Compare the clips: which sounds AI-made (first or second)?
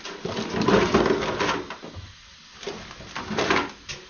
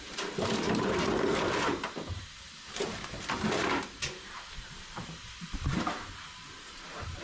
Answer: second